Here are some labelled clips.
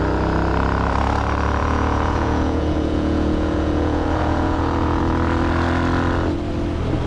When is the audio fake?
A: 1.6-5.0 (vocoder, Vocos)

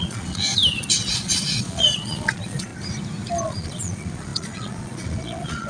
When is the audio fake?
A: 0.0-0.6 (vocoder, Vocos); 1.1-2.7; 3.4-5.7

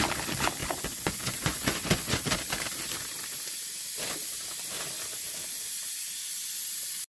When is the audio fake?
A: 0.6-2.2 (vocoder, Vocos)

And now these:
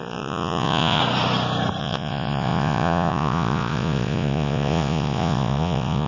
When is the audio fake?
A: 0.0-1.0 (vocoder, Vocos); 1.8-6.1

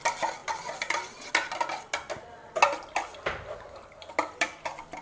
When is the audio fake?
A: none

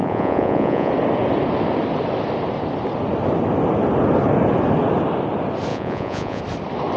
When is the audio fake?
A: 0.0-0.9 (vocoder, Vocos); 5.7-6.4